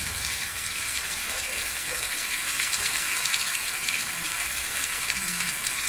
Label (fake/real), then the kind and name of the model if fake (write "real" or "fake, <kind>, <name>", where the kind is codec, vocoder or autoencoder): fake, codec, SNAC